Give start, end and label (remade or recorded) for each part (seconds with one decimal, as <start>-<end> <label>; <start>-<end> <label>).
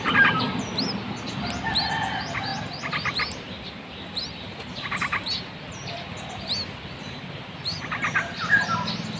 0.0-9.2 recorded